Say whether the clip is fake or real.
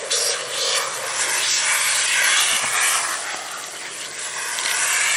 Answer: real